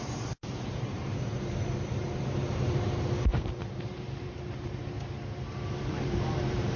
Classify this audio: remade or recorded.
remade